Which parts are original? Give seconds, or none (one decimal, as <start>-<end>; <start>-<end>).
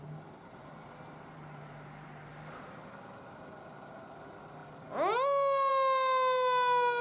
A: 0.0-7.0